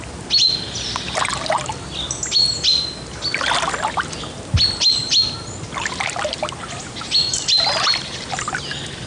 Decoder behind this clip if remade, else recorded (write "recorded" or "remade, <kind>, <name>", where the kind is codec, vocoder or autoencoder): recorded